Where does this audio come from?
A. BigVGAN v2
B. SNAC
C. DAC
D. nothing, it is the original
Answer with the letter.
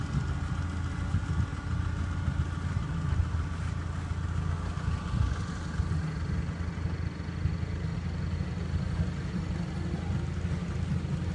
D